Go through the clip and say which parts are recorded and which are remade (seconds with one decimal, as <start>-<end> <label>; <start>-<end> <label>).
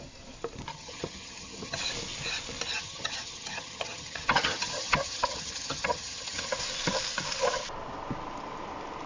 0.0-0.7 recorded; 0.7-1.8 remade; 1.8-2.7 recorded; 2.7-6.5 remade; 6.5-9.1 recorded